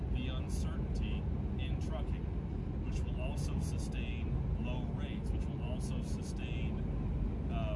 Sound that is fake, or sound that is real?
real